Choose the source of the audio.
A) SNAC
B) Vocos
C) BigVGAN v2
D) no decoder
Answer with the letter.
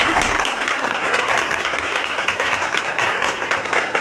A